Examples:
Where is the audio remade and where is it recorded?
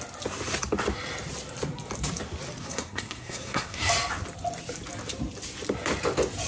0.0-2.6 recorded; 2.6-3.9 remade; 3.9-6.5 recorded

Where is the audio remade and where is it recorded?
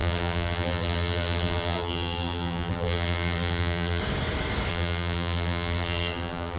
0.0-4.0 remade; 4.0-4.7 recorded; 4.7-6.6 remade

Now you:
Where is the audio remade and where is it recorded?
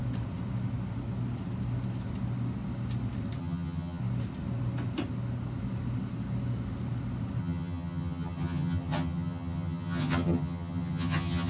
0.0-3.4 recorded; 3.4-4.0 remade; 4.0-7.4 recorded; 7.4-11.5 remade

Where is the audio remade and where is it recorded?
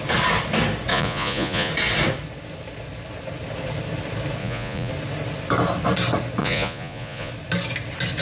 0.0-0.9 recorded; 0.9-1.7 remade; 1.7-4.4 recorded; 4.4-4.9 remade; 4.9-6.4 recorded; 6.4-7.3 remade; 7.3-8.2 recorded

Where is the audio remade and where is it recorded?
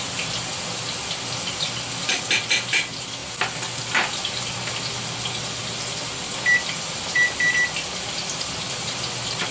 0.0-9.5 recorded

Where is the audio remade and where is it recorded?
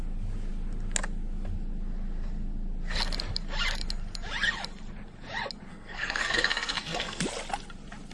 0.0-5.7 recorded; 5.7-7.2 remade; 7.2-8.1 recorded